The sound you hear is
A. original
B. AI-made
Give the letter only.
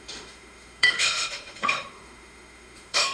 B